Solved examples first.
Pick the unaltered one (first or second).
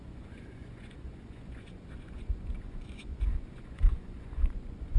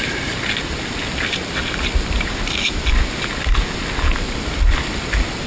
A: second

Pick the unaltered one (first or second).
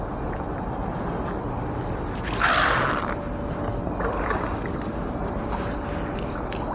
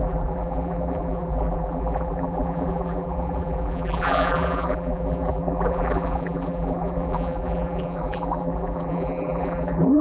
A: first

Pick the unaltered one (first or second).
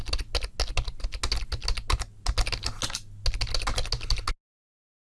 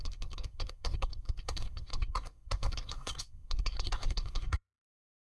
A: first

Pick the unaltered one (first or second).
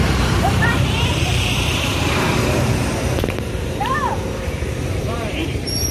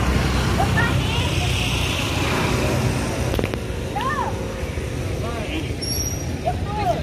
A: second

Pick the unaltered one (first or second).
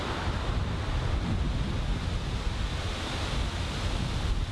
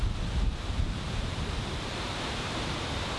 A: first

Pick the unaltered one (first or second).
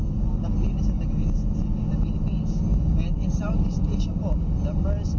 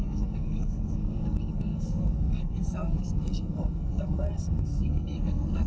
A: first